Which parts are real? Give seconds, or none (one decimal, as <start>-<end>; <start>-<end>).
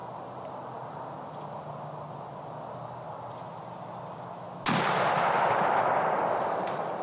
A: 0.0-7.0